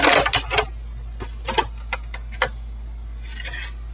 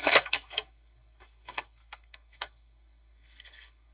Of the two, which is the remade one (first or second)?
second